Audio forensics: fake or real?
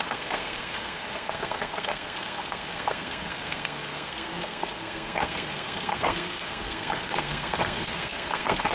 fake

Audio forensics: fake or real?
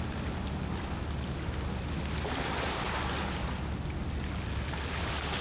real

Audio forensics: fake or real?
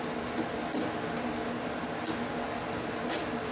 real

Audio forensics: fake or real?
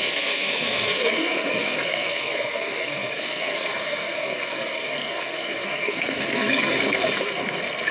fake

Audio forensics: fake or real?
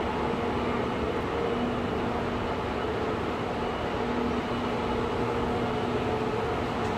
real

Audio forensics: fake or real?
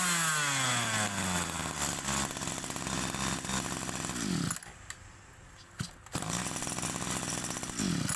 real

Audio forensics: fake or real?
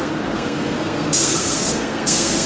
fake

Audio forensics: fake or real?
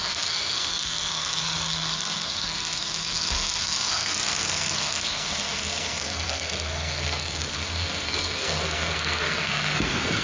fake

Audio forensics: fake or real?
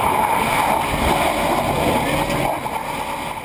real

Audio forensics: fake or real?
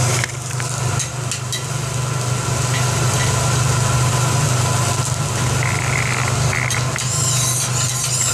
real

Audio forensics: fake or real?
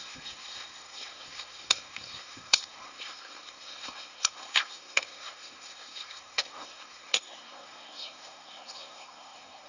fake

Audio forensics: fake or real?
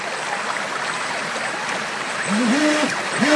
real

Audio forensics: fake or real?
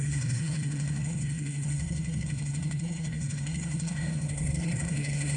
fake